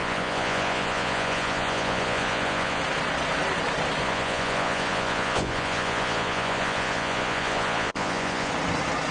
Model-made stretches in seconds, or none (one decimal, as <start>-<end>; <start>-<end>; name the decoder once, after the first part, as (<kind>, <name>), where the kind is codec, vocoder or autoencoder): 0.0-2.8 (vocoder, Vocos); 4.0-8.5